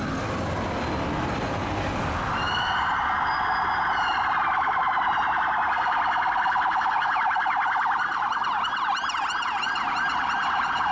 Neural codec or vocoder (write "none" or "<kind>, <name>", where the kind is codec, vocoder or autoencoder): none